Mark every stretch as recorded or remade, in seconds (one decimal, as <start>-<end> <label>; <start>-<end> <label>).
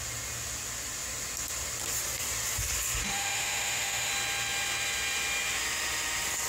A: 0.0-3.0 recorded; 3.0-4.1 remade; 4.1-6.5 recorded